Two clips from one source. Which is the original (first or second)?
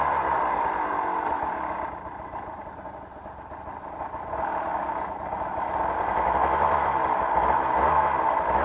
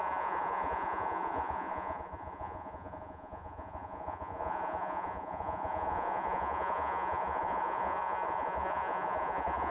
first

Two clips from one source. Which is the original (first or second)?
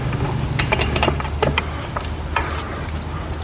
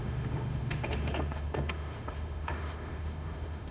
first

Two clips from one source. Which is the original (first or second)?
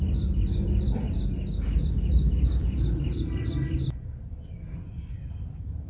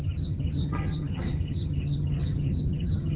first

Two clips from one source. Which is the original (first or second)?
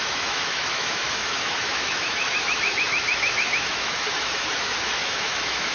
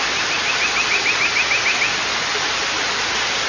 second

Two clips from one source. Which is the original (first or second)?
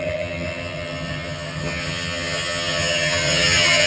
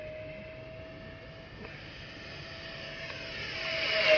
second